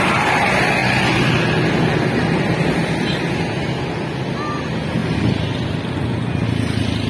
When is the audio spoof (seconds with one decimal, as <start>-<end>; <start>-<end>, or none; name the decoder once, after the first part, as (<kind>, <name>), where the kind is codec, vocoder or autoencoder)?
none